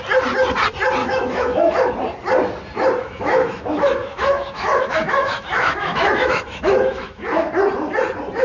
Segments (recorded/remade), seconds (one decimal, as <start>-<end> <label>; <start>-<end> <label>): 0.0-1.0 recorded; 1.0-1.9 remade; 1.9-3.0 recorded; 3.0-7.5 remade; 7.5-8.4 recorded